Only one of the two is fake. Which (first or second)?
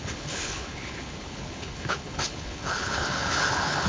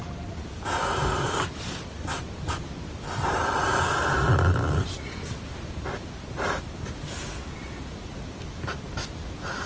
first